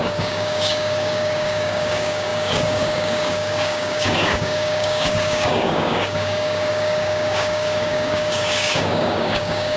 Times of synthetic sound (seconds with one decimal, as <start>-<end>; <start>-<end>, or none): 0.0-9.8